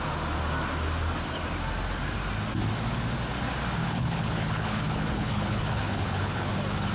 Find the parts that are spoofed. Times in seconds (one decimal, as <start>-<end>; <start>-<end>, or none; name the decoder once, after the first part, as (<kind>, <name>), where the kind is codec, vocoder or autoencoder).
3.8-6.5 (codec, HILCodec)

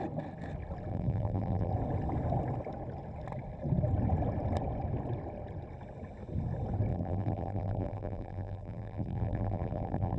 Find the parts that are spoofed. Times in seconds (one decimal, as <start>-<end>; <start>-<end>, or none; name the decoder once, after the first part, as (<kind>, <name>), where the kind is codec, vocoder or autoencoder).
0.9-1.7 (vocoder, BigVGAN v2); 6.9-10.2

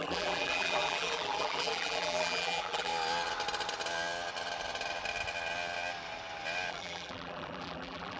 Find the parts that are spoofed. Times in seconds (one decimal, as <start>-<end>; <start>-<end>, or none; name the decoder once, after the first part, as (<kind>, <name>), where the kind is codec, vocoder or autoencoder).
0.0-2.9 (vocoder, BigVGAN v2); 6.7-8.2

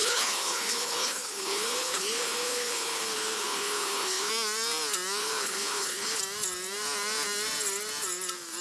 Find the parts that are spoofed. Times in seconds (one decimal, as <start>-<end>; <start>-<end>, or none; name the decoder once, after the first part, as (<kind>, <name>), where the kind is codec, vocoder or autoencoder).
0.0-4.3 (codec, HILCodec); 5.2-6.2